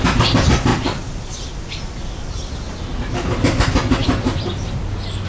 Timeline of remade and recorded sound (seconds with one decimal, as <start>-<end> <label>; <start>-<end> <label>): 0.0-0.7 recorded; 0.7-2.5 remade; 2.5-4.0 recorded; 4.0-4.8 remade; 4.8-5.3 recorded